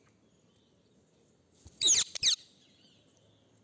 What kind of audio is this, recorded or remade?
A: recorded